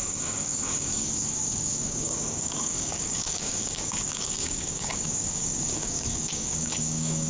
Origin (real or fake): fake